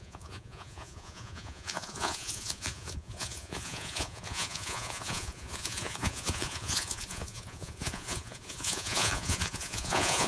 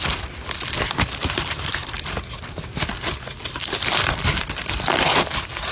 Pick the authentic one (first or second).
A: second